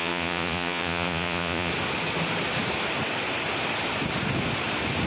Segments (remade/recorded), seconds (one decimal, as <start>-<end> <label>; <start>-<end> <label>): 0.0-1.7 remade; 1.7-5.1 recorded